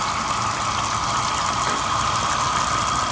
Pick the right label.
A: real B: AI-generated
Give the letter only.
A